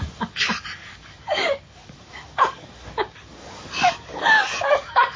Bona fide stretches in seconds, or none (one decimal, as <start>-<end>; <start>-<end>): none